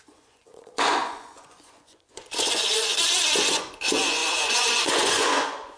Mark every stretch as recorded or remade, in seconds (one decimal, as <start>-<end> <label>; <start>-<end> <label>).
0.0-5.8 remade